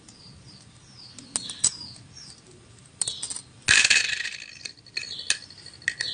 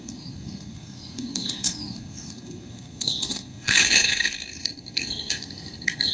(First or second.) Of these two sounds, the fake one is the second